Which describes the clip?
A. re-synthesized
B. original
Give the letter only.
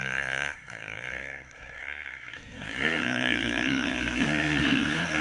A